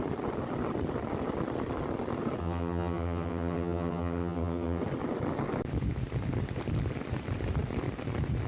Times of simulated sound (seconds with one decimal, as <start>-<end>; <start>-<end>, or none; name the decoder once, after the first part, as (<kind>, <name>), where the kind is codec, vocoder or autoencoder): 2.4-4.8 (vocoder, HiFi-GAN)